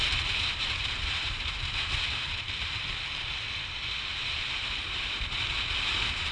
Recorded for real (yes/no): no